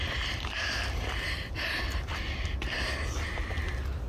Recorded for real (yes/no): yes